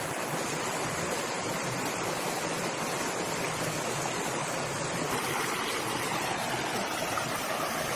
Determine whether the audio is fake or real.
fake